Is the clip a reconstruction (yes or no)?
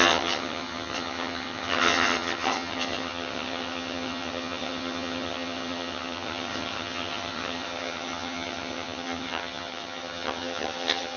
yes